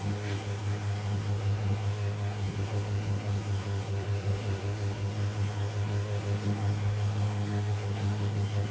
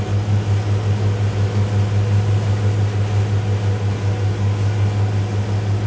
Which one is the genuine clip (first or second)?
second